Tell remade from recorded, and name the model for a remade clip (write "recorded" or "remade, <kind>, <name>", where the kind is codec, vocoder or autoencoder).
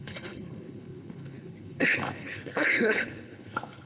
remade, codec, HILCodec